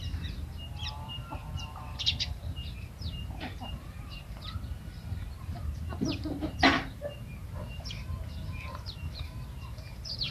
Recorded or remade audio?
remade